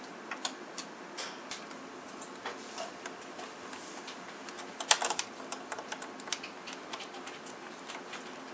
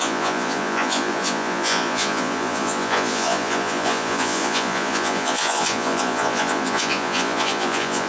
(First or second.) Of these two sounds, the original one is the first